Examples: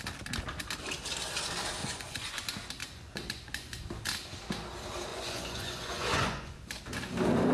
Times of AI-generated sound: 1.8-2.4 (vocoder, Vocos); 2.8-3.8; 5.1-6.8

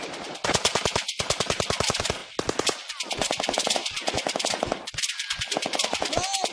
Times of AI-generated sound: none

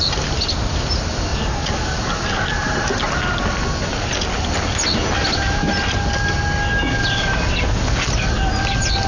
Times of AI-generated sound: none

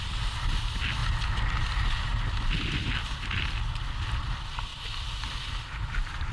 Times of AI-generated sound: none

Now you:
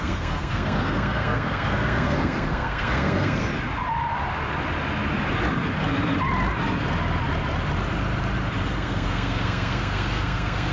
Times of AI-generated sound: 0.0-3.5 (codec, SNAC); 8.7-10.7

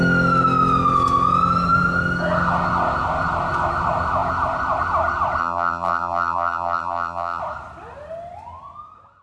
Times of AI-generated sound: 5.4-7.4 (vocoder, BigVGAN v2)

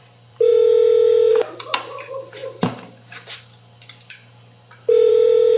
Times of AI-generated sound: 0.0-0.5 (vocoder, BigVGAN v2); 1.3-2.4; 5.1-5.6

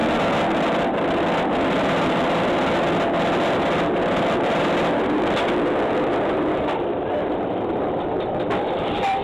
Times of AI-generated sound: 4.6-9.2 (vocoder, BigVGAN v2)